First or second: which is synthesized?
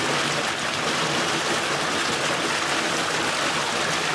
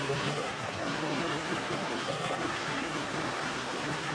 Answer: second